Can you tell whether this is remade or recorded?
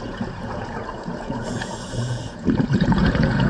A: remade